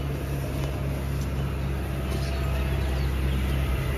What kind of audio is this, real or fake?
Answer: real